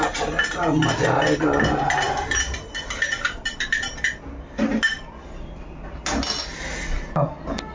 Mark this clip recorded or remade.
recorded